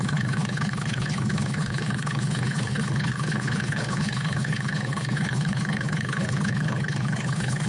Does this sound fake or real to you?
fake